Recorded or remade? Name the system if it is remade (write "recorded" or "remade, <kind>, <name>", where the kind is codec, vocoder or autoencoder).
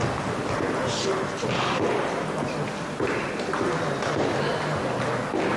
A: recorded